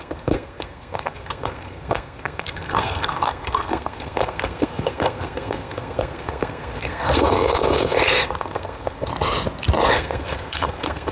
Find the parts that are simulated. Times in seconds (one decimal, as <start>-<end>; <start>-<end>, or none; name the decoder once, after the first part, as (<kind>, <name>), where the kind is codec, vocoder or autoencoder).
0.0-9.1 (codec, SNAC); 9.9-11.1